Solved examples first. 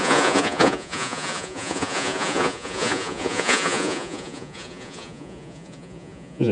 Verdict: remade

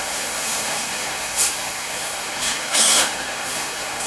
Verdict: remade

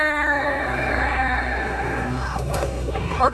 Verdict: remade